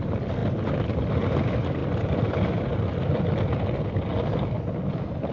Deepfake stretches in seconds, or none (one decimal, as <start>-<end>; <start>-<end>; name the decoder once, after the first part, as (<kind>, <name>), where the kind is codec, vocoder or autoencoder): none